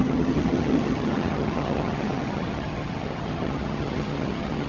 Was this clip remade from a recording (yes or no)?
yes